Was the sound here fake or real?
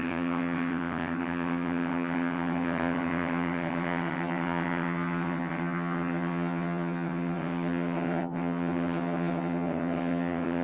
fake